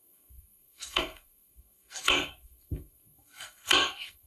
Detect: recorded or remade remade